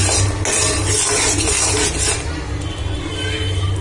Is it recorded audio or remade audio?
recorded